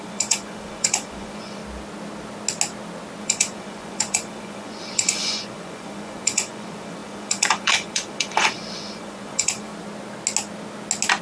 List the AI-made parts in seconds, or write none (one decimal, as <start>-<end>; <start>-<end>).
0.0-1.6; 3.2-9.7